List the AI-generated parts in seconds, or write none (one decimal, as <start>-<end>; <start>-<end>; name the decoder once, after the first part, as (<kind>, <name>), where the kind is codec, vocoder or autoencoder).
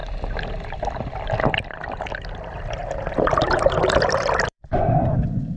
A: 2.8-4.7 (vocoder, BigVGAN v2)